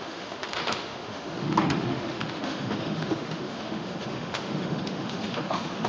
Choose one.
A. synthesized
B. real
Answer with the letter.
A